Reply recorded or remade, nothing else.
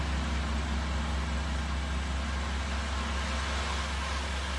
recorded